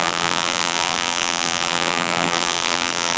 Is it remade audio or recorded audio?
remade